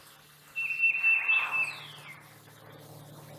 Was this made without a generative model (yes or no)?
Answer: yes